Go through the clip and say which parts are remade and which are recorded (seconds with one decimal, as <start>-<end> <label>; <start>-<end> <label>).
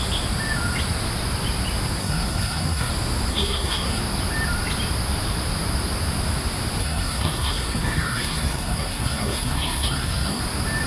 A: 0.0-2.0 recorded; 2.0-2.9 remade; 2.9-3.3 recorded; 3.3-4.0 remade; 4.0-6.8 recorded; 6.8-10.4 remade; 10.4-10.9 recorded